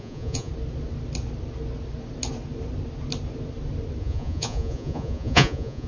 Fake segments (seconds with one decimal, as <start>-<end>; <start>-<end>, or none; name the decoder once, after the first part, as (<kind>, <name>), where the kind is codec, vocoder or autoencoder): 0.0-0.5 (vocoder, Vocos); 4.0-5.9